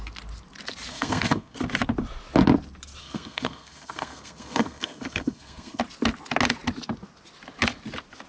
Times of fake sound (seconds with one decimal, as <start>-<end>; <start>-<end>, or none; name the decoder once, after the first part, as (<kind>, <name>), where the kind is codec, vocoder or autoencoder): 0.9-1.6 (codec, SNAC); 3.0-5.8